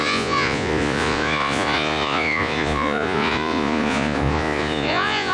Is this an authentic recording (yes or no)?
no